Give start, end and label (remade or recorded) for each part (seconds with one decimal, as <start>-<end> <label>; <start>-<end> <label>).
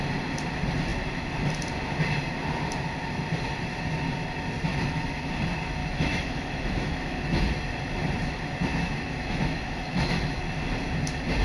0.0-4.7 recorded; 4.7-5.3 remade; 5.3-5.8 recorded; 5.8-7.4 remade; 7.4-8.7 recorded; 8.7-10.4 remade; 10.4-11.4 recorded